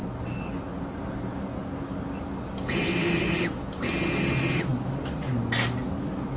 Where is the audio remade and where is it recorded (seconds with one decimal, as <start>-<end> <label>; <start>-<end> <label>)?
0.0-6.4 recorded